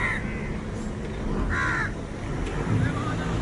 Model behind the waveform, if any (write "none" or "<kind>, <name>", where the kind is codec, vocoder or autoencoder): none